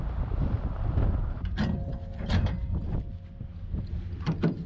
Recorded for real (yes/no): yes